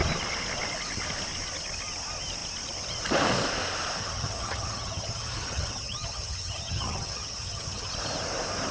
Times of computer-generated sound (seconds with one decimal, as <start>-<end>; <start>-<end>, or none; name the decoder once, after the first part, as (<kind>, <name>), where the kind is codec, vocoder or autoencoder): 4.0-7.9 (vocoder, HiFi-GAN)